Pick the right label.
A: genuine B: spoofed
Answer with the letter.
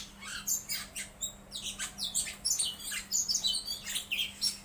A